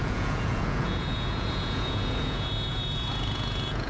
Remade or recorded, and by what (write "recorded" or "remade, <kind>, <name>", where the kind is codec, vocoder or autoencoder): remade, vocoder, Vocos